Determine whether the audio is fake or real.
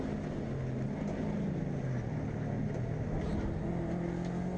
real